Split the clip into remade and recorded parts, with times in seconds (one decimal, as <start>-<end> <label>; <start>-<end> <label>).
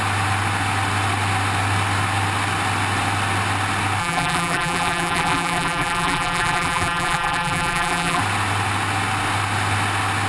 0.0-4.0 recorded; 4.0-8.2 remade; 8.2-10.3 recorded